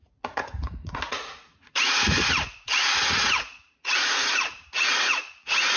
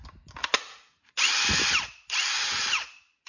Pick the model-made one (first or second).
first